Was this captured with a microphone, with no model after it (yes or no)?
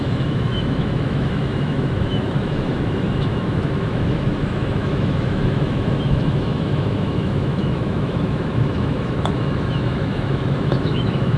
no